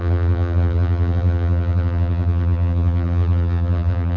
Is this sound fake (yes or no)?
yes